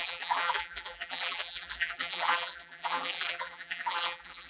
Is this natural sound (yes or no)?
no